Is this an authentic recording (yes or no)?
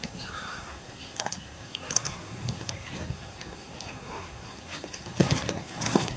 no